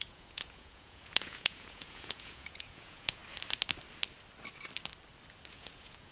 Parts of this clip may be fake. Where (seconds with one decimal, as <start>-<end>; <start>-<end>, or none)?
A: 0.0-3.2; 5.5-6.1